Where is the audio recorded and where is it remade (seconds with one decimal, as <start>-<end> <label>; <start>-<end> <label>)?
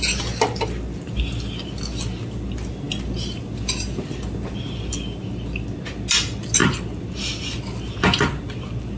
0.0-9.0 recorded